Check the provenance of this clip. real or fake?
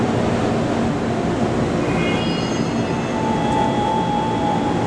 real